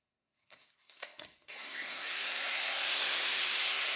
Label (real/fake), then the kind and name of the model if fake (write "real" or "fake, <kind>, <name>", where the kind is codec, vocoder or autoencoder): fake, codec, SNAC